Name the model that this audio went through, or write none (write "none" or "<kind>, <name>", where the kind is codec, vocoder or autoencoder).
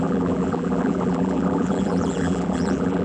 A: vocoder, BigVGAN v2